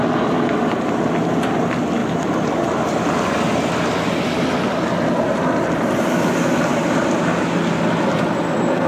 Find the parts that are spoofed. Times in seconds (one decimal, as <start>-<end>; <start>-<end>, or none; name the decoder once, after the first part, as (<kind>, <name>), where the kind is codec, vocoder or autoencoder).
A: none